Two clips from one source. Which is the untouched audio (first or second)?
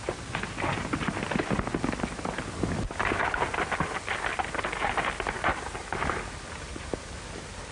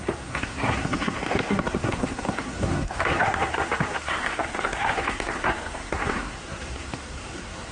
first